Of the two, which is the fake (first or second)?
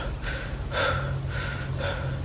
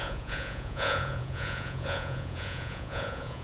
second